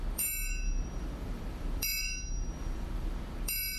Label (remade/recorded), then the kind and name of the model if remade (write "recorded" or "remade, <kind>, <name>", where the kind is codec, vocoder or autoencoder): remade, vocoder, BigVGAN v2